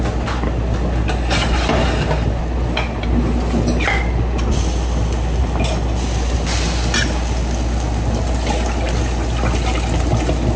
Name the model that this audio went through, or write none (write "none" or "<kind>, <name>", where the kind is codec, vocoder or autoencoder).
none